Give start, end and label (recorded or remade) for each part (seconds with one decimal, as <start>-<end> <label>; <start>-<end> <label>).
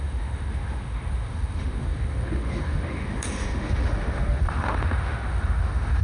0.0-6.0 remade